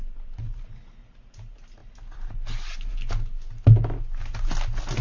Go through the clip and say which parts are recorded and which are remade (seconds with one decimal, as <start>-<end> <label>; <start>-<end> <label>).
0.0-1.8 remade; 1.8-5.0 recorded